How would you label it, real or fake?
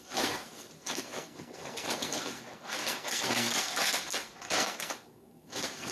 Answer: fake